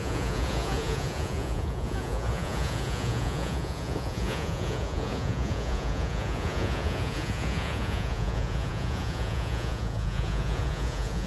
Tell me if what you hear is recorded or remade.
remade